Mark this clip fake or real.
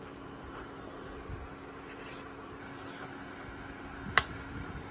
real